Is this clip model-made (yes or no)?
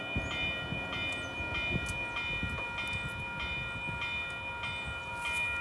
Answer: no